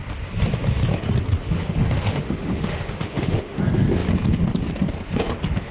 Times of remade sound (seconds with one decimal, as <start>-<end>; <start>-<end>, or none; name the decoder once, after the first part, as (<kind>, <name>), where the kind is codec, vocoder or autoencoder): 1.4-3.6 (autoencoder, DAC-VAE)